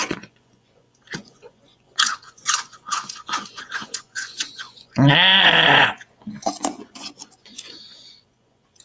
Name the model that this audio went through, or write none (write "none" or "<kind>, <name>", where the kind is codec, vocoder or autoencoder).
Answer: vocoder, Vocos